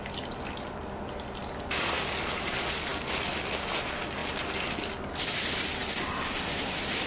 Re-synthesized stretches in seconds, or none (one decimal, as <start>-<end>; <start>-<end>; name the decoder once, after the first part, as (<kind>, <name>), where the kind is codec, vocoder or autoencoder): 2.9-3.7 (vocoder, BigVGAN v2); 4.2-4.9; 5.8-7.1